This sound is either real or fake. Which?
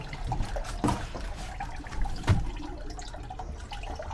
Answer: real